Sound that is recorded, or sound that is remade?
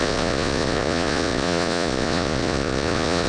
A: remade